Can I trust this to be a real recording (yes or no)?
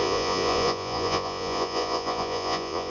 no